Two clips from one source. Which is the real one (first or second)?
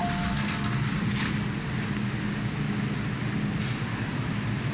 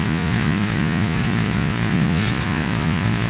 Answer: first